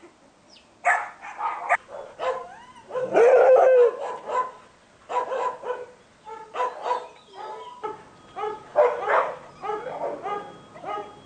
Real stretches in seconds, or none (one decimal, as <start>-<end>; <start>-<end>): 0.0-11.3